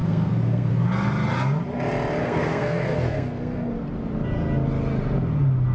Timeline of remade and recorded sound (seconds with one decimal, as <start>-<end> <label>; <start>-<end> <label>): 0.0-0.7 remade; 0.7-2.2 recorded; 2.2-3.7 remade; 3.7-5.7 recorded